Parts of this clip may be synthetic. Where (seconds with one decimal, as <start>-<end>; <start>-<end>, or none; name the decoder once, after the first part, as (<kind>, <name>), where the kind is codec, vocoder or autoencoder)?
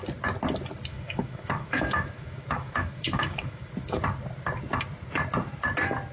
0.9-3.7 (autoencoder, DAC-VAE)